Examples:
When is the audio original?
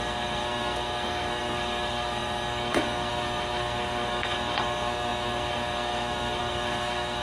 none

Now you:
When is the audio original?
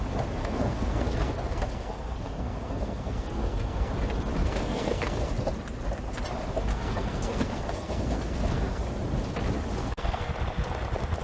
0.0-0.4; 3.9-4.4; 5.3-6.7; 8.8-9.8; 10.3-11.2